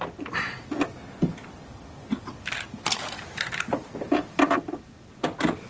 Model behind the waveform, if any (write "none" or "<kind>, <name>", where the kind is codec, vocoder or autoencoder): none